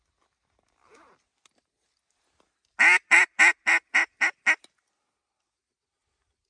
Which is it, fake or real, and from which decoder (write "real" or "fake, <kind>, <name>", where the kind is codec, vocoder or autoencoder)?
real